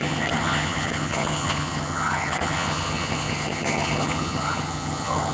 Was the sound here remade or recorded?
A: remade